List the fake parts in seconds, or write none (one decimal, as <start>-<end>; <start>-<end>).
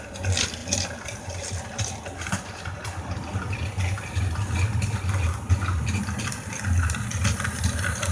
none